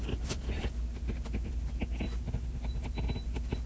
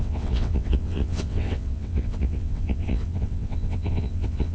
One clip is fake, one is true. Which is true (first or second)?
first